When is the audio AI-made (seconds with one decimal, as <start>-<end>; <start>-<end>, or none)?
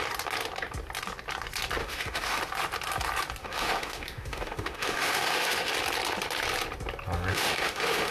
1.8-2.4; 3.4-5.7; 7.3-8.1